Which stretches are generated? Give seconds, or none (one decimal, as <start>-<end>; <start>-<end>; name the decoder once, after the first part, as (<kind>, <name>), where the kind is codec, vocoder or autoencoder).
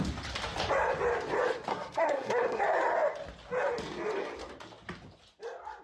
1.7-2.6 (codec, SNAC)